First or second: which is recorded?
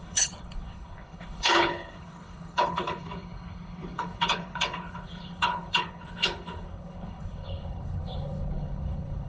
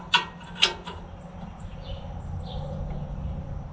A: second